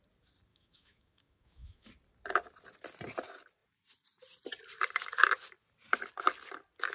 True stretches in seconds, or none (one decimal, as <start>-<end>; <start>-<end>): 0.0-0.5; 1.9-6.9